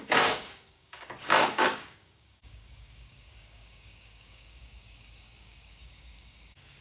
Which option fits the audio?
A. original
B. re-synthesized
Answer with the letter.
B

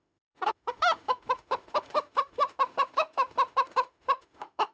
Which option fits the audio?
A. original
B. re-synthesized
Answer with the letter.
B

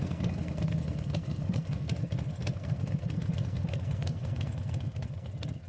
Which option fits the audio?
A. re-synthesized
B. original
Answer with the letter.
A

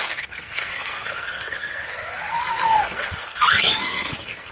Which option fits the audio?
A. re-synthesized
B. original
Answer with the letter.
A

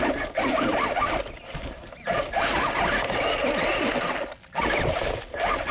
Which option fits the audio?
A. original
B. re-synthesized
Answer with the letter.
A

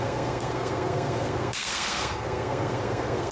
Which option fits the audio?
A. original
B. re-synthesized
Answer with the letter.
B